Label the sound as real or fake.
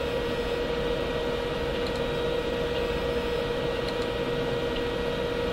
real